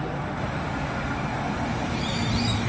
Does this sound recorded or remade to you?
recorded